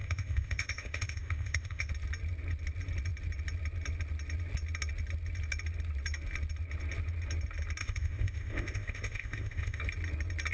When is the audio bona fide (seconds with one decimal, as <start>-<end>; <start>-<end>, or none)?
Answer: 1.9-7.8; 9.8-10.5